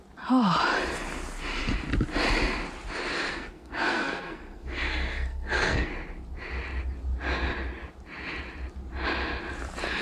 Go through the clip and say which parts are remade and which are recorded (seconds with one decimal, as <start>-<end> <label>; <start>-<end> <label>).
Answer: 0.0-3.3 recorded; 3.3-5.9 remade; 5.9-10.0 recorded